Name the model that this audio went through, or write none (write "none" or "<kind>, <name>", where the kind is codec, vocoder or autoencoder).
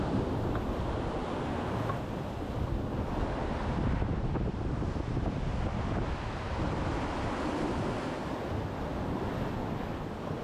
none